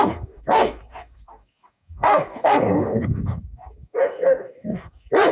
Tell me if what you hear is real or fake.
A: fake